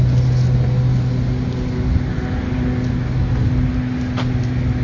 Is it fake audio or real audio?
real